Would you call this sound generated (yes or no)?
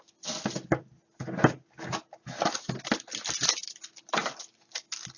no